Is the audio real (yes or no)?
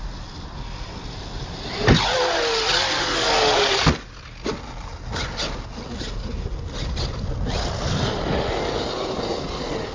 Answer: yes